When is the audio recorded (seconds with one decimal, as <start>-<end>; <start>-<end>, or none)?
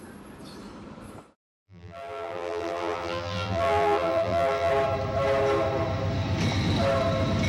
0.0-1.6; 4.7-7.5